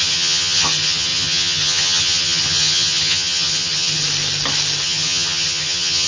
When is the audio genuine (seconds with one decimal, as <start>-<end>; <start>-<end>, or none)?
4.0-4.8